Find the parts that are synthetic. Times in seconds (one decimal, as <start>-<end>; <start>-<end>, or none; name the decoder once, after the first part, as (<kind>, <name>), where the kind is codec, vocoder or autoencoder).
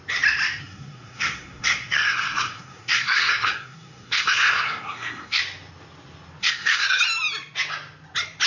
0.6-5.4 (codec, SNAC); 6.4-7.0